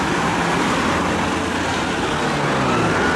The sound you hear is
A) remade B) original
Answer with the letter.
B